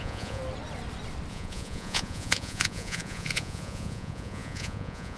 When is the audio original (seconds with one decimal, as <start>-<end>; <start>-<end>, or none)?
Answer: 0.4-1.3